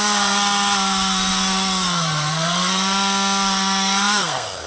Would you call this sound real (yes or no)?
no